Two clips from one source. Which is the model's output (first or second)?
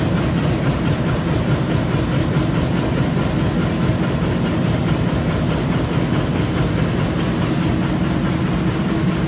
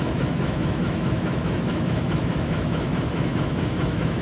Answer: second